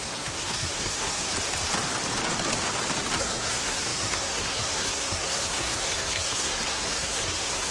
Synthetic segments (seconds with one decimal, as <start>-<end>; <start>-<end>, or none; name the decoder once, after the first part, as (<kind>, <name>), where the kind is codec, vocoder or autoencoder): 0.0-1.3 (codec, SNAC); 3.2-7.7